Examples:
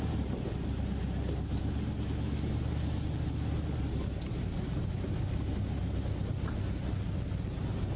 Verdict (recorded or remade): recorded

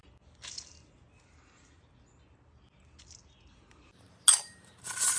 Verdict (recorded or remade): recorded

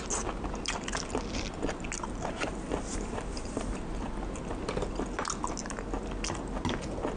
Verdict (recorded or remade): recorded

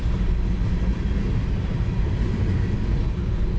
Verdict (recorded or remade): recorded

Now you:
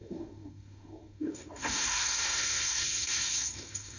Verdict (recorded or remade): remade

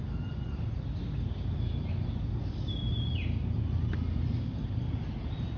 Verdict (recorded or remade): remade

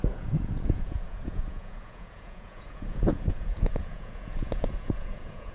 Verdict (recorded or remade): remade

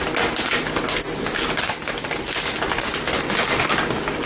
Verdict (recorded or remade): recorded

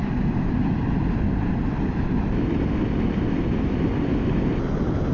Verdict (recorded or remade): recorded